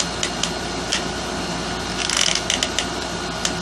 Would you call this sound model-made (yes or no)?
no